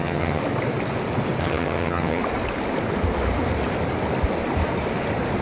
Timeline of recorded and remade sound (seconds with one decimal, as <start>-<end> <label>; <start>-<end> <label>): 0.0-0.4 remade; 0.4-1.4 recorded; 1.4-2.2 remade; 2.2-5.4 recorded